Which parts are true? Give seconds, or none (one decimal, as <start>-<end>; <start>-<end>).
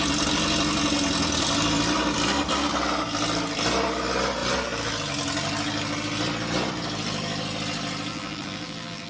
0.0-8.1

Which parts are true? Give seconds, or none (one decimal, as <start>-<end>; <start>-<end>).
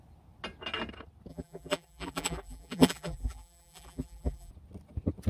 0.0-1.3; 4.5-5.3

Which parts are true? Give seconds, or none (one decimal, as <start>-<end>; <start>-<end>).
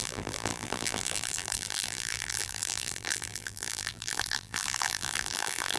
none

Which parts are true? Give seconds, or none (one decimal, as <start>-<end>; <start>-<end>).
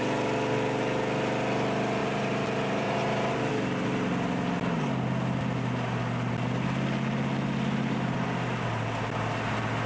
0.0-2.0; 3.5-9.9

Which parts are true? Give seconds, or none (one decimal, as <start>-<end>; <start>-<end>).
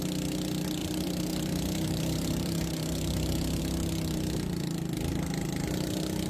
0.0-0.8; 3.6-6.3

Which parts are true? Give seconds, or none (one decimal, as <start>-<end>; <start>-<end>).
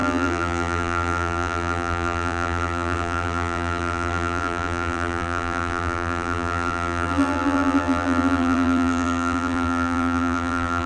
none